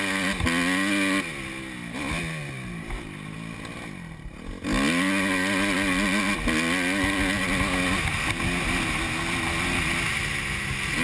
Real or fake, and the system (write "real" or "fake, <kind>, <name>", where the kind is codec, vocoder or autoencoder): real